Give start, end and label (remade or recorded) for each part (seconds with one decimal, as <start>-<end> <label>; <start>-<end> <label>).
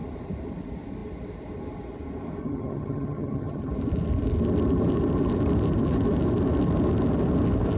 0.0-2.4 recorded; 2.4-3.7 remade; 3.7-7.8 recorded